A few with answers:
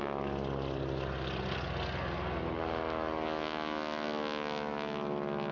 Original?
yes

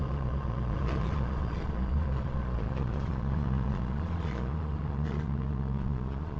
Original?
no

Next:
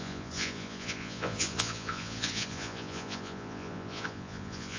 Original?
no